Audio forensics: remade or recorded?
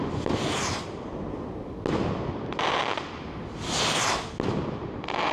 recorded